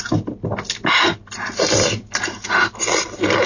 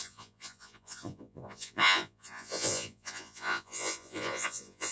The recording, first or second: first